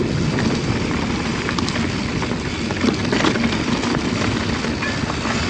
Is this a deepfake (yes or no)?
no